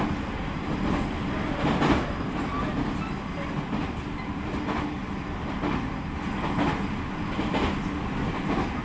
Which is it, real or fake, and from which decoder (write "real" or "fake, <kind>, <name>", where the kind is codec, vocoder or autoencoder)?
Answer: real